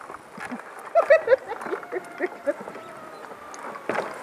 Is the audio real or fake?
real